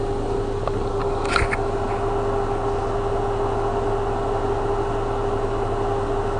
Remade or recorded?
recorded